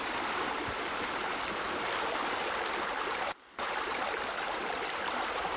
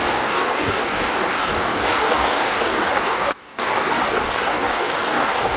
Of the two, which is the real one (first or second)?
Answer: first